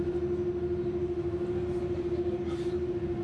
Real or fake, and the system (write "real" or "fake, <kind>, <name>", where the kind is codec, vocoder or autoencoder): real